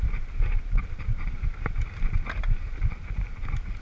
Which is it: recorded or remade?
remade